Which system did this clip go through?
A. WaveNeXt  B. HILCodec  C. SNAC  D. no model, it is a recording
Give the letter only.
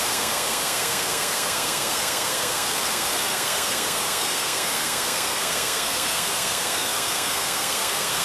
C